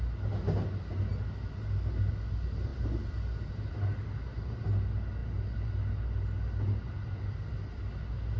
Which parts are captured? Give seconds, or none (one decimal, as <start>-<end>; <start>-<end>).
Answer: 0.0-8.4